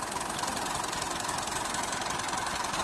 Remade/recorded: recorded